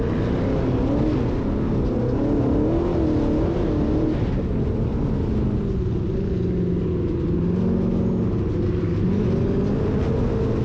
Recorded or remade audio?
recorded